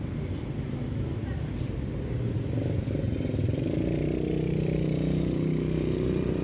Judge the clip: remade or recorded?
recorded